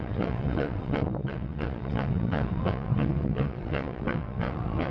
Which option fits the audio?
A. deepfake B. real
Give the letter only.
A